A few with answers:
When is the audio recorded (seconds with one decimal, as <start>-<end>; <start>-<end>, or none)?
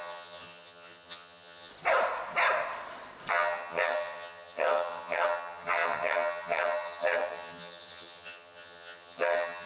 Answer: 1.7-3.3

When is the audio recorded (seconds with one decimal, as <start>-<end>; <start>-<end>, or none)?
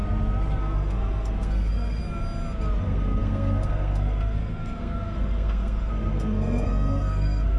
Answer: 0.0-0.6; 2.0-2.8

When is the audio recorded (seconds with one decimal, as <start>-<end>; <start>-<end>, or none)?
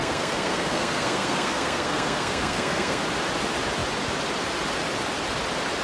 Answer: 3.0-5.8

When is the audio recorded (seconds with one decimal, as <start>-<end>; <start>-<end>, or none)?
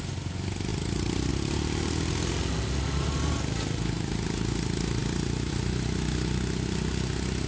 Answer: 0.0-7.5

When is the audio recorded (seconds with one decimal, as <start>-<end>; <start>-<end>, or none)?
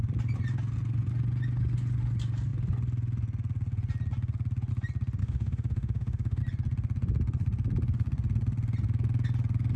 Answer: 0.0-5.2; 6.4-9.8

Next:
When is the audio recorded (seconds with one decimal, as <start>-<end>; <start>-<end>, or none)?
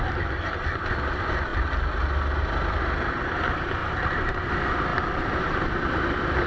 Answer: 0.0-3.8; 4.5-4.9; 5.9-6.5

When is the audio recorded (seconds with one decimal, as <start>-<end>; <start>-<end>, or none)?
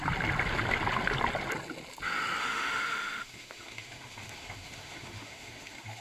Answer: 0.0-2.4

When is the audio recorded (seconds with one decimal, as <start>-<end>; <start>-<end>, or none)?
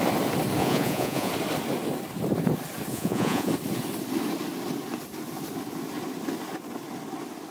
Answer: 0.0-0.6; 1.3-2.9; 3.5-7.5